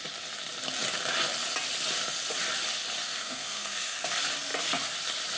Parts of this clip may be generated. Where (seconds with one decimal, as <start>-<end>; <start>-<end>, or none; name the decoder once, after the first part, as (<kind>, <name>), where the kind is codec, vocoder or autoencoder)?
3.0-4.1 (codec, SNAC)